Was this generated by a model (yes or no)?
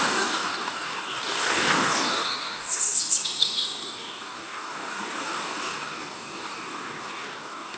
yes